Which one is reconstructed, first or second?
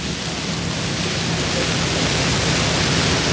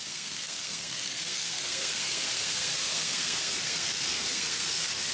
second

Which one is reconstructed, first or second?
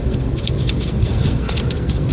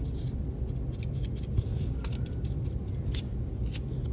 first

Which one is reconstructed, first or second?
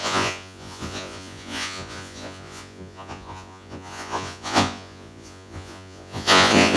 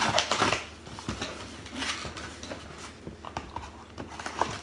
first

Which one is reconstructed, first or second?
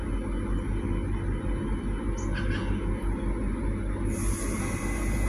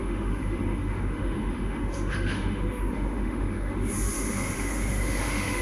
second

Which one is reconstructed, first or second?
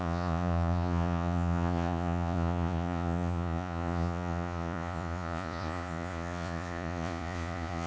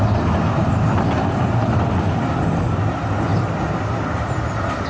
first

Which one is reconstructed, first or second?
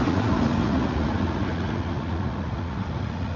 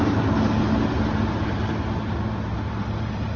first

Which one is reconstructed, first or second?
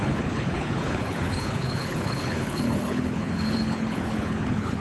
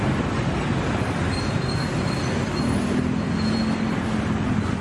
first